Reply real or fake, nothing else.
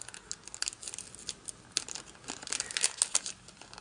real